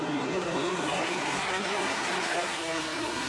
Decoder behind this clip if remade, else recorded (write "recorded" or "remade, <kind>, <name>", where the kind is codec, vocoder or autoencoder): remade, codec, SNAC